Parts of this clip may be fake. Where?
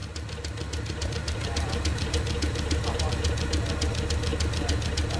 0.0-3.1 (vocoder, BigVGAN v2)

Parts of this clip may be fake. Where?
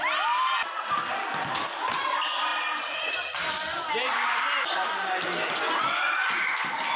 none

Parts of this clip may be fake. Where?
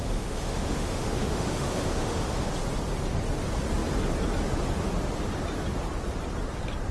0.0-2.5 (autoencoder, DAC-VAE)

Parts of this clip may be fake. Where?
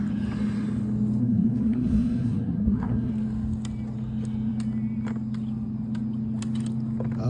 1.2-3.1 (codec, SNAC)